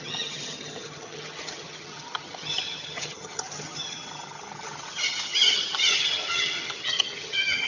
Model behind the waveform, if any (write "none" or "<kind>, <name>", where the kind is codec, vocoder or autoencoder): vocoder, HiFi-GAN